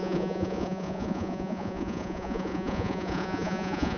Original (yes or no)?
no